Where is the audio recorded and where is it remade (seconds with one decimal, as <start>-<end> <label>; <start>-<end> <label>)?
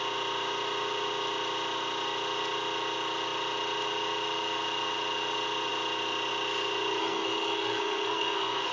0.0-7.0 recorded; 7.0-8.7 remade